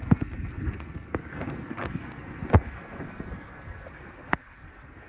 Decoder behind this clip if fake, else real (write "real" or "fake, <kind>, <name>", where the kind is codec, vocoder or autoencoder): fake, codec, SNAC